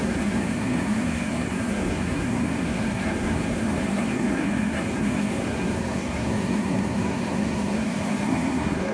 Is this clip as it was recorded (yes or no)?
no